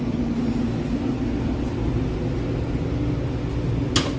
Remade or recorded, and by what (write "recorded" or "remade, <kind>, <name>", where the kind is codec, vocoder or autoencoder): recorded